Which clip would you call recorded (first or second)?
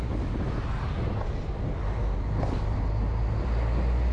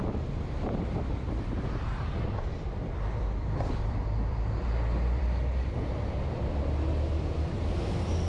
first